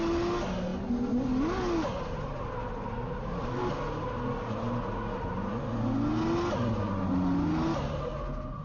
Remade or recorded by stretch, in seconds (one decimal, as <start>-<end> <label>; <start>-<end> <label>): 0.0-8.6 recorded